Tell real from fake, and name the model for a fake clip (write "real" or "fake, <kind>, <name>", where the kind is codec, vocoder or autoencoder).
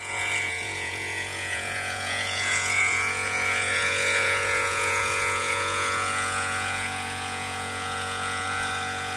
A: fake, vocoder, Vocos